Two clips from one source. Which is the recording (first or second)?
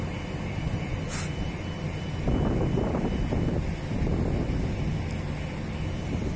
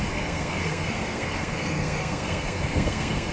first